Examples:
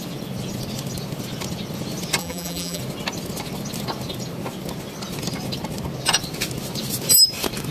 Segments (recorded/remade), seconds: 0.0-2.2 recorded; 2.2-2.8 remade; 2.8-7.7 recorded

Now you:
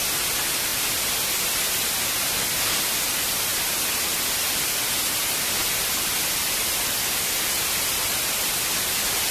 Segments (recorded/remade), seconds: 0.0-9.3 recorded

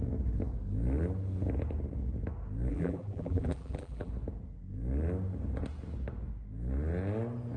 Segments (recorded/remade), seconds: 0.0-2.7 recorded; 2.7-4.1 remade; 4.1-7.6 recorded

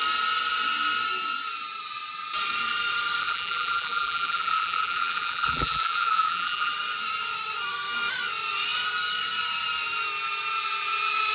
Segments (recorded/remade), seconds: 0.0-3.2 recorded; 3.2-6.7 remade; 6.7-11.3 recorded